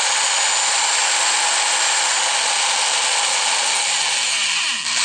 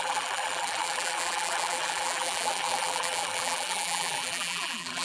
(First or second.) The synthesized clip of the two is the second